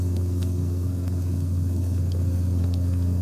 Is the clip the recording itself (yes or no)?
no